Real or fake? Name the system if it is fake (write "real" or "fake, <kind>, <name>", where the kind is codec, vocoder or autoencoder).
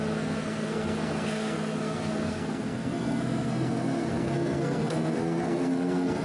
fake, codec, SNAC